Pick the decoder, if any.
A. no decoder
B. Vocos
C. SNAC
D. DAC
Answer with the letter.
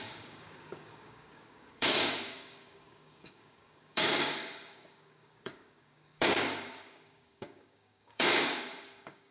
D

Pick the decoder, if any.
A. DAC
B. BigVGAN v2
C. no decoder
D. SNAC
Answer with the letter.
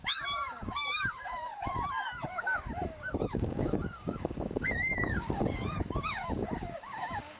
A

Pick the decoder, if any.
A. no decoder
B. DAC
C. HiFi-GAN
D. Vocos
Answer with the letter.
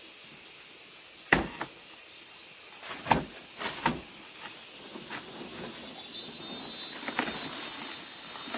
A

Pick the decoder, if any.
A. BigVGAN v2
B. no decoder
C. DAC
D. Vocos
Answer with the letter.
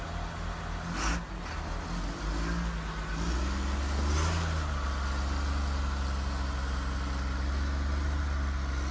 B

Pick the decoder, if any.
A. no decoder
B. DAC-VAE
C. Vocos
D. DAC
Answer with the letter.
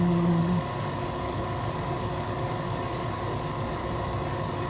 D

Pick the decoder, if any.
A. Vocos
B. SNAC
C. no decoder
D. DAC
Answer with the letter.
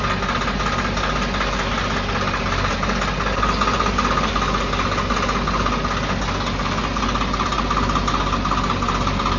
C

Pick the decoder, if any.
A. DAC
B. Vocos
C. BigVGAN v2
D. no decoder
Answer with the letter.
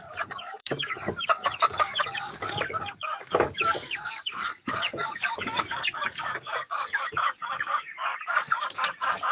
A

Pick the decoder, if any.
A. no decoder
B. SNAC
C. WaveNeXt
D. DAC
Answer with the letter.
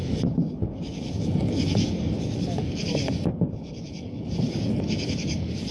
D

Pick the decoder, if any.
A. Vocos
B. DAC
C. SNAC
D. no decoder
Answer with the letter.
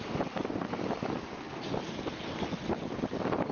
D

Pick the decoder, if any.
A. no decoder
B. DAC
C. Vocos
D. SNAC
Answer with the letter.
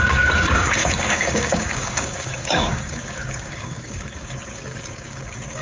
B